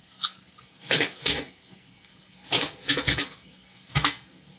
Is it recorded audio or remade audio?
remade